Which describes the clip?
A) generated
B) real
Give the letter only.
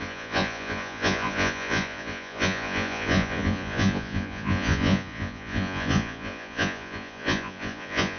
A